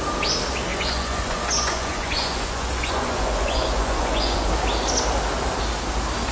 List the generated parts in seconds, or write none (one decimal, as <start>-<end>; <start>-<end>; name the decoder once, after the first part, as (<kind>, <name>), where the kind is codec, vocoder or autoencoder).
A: 0.7-4.5 (vocoder, Vocos)